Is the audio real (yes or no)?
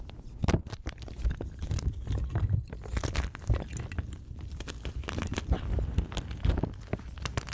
no